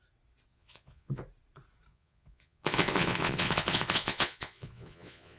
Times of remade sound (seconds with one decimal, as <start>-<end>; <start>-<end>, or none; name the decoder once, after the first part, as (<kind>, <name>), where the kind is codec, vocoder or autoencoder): 0.5-1.2 (vocoder, Vocos); 1.9-5.4